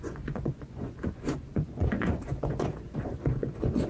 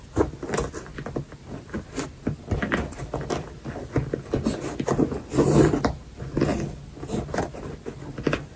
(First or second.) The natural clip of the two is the second